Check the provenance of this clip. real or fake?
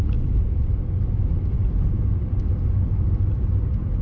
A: real